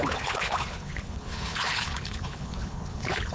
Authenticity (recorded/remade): remade